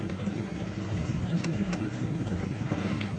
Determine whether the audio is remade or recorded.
remade